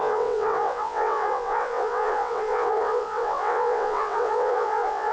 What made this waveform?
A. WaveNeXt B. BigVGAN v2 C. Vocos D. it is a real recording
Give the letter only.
A